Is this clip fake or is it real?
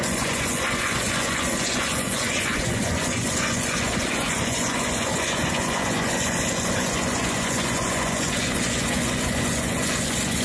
fake